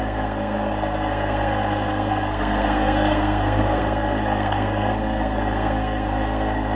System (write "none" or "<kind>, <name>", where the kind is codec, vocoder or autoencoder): codec, SNAC